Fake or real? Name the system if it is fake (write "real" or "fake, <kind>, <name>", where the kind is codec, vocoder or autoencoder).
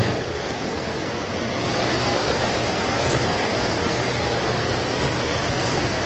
fake, codec, SNAC